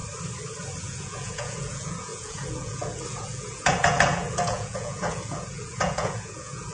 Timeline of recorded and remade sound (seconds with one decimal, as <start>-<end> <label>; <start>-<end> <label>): 0.0-0.8 recorded; 0.8-6.7 remade